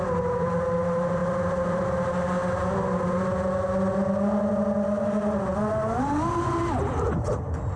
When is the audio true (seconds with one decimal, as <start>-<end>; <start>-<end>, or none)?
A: 0.0-7.8